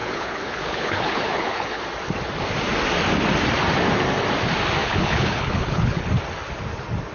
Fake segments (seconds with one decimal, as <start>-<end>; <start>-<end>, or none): 0.0-1.8; 4.8-6.1